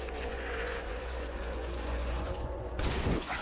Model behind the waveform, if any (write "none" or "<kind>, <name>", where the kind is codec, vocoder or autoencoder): vocoder, Vocos